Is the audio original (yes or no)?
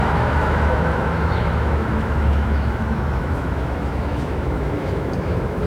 no